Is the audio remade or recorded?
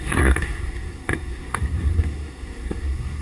remade